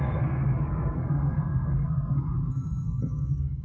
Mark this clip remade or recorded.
remade